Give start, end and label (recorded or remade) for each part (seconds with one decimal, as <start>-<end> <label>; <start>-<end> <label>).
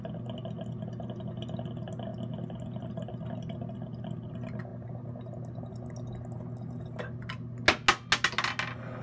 0.0-9.0 recorded